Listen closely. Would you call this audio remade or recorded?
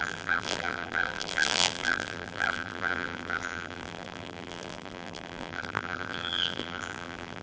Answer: remade